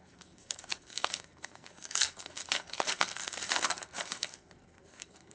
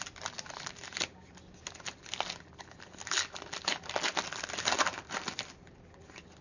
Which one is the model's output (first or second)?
first